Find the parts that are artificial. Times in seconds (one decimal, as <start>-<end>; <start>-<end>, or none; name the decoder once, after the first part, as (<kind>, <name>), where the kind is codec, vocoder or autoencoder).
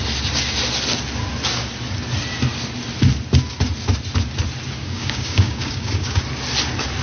4.8-6.2 (codec, DAC)